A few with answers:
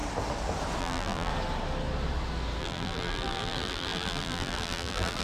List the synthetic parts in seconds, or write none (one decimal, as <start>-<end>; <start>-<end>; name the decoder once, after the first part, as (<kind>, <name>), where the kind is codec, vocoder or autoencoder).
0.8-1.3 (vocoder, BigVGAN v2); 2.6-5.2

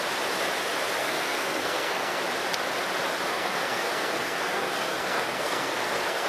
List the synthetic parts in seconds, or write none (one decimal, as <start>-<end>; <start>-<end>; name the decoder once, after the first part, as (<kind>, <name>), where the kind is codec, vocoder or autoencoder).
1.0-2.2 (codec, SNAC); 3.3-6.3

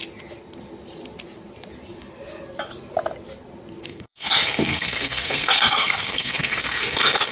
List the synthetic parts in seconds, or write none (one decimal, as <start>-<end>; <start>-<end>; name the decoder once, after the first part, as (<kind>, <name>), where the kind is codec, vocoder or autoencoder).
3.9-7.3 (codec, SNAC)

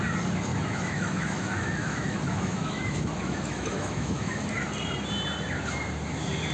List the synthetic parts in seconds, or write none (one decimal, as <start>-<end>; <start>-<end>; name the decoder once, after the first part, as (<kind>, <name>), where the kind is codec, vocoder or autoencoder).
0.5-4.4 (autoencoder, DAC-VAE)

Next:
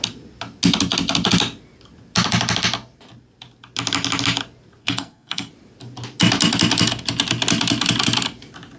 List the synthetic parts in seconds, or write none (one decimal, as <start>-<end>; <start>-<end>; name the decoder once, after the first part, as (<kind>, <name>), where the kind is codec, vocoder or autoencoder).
4.8-5.5 (codec, SNAC)

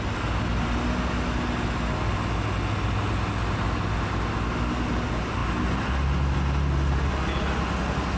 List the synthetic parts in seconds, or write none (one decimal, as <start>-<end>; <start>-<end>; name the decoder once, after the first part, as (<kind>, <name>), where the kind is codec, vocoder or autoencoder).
none

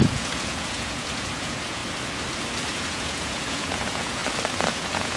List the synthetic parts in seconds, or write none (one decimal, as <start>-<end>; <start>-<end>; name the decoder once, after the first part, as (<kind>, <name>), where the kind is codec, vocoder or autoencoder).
0.0-1.8 (vocoder, Vocos); 2.7-4.2; 4.7-5.2